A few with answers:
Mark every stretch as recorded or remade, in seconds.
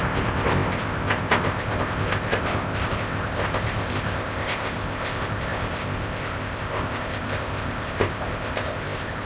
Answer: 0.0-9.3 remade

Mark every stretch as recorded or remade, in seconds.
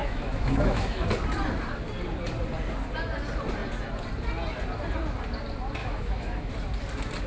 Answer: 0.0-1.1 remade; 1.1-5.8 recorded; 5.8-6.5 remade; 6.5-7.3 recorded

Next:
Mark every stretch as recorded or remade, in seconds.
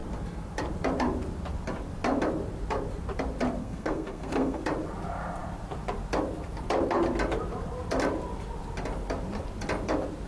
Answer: 0.0-3.6 recorded; 3.6-4.6 remade; 4.6-10.3 recorded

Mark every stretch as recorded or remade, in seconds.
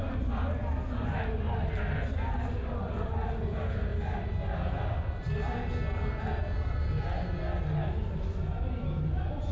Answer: 0.0-9.5 recorded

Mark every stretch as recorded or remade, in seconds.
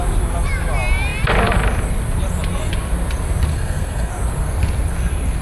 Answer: 0.0-3.5 recorded; 3.5-4.1 remade; 4.1-5.4 recorded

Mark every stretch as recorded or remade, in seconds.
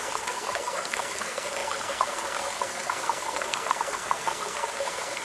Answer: 0.0-5.2 remade